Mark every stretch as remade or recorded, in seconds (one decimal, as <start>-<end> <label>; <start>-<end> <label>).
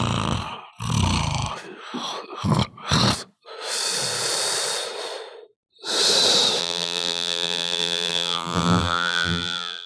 0.0-6.6 recorded; 6.6-9.9 remade